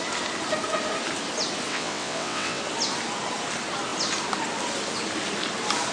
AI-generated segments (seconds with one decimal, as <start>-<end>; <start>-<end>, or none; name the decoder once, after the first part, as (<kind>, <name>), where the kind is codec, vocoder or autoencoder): 1.7-2.6 (vocoder, WaveNeXt)